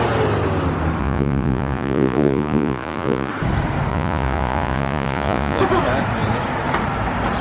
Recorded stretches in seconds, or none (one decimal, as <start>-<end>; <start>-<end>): 0.0-1.0; 3.3-3.9; 5.6-7.4